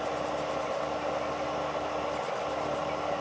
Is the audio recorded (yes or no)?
yes